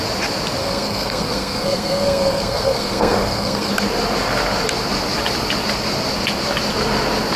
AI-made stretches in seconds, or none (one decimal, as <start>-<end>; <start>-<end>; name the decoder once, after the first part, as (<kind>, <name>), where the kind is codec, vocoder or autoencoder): 0.6-3.7 (codec, SNAC)